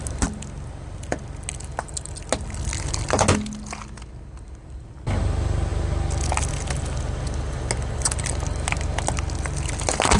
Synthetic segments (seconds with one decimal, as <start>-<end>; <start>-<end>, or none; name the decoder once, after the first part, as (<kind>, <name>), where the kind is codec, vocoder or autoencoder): none